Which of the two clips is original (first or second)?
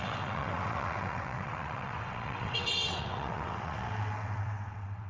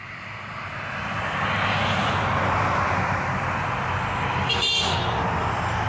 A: second